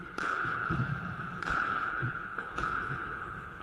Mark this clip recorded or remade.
remade